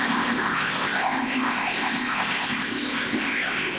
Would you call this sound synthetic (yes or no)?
yes